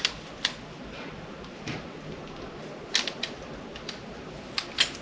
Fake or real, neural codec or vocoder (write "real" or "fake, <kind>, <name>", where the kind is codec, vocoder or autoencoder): real